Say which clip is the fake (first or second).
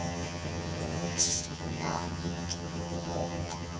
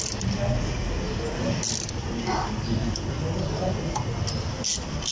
first